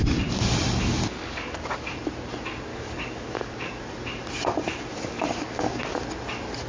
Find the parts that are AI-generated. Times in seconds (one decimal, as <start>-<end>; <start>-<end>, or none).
1.2-1.9; 2.7-3.8; 4.9-5.8